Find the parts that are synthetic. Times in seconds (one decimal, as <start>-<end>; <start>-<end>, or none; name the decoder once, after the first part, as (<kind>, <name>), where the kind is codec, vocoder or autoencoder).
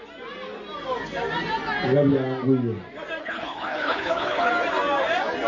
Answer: 3.2-4.5 (codec, HILCodec)